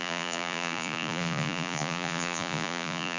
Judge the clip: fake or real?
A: fake